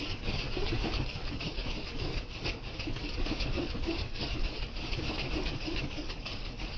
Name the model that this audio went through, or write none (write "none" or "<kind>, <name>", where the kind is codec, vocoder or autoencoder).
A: codec, DAC